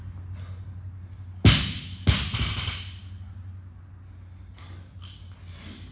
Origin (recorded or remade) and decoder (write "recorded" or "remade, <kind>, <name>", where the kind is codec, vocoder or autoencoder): recorded